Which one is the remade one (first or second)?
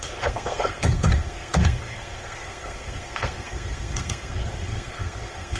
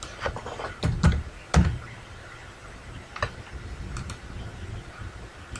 first